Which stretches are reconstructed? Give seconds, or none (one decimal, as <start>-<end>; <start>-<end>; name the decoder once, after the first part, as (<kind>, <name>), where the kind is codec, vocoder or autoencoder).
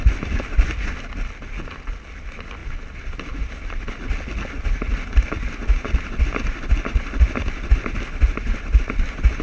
none